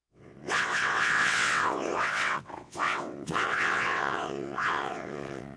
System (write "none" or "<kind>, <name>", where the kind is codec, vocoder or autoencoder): vocoder, WaveNeXt